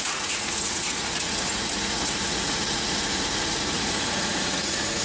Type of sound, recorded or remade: remade